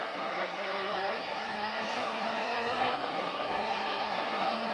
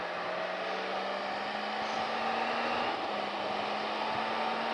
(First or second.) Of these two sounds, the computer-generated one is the first